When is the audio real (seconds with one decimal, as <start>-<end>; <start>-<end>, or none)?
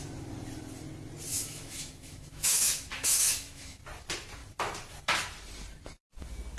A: 0.0-1.3; 3.8-6.6